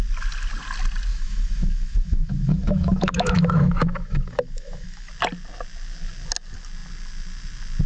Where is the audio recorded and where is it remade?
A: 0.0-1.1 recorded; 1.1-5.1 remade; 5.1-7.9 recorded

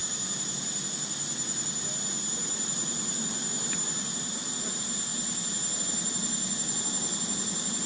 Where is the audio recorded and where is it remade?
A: 0.0-7.9 recorded

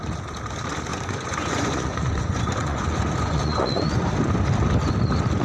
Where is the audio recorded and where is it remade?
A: 0.0-0.9 recorded; 0.9-4.1 remade; 4.1-5.4 recorded

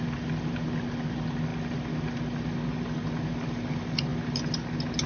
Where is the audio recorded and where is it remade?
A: 0.0-5.1 recorded

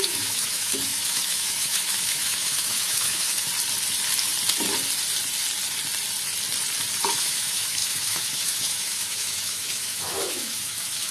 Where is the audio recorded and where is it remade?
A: 0.0-3.5 remade; 3.5-7.1 recorded; 7.1-11.1 remade

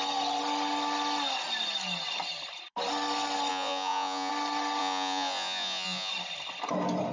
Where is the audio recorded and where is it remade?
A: 0.0-3.5 recorded; 3.5-4.3 remade; 4.3-4.8 recorded; 4.8-6.1 remade; 6.1-7.1 recorded

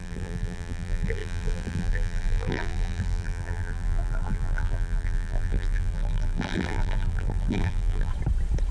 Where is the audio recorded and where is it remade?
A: 0.0-8.1 remade; 8.1-8.7 recorded